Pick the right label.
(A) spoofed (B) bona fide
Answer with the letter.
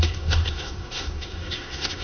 A